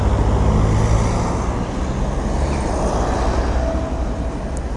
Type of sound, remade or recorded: recorded